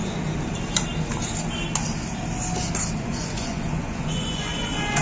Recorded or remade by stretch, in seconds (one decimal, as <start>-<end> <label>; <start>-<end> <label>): 0.0-3.0 recorded; 3.0-5.0 remade